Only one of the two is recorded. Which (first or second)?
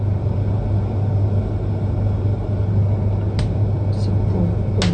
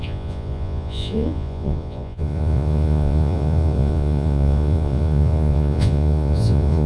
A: first